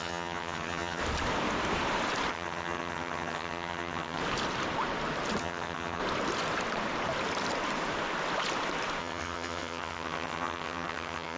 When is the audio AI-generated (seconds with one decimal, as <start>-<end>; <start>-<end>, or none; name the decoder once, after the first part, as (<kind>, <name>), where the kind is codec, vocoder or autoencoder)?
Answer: 0.0-1.0 (vocoder, HiFi-GAN); 2.3-4.2; 5.4-6.0; 9.0-11.4